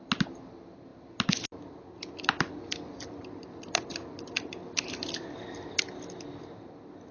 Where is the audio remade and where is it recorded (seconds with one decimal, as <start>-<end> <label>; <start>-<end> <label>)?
0.0-7.1 recorded

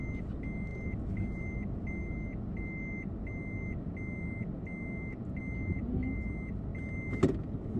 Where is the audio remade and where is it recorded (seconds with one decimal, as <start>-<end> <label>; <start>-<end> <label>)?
0.0-7.8 recorded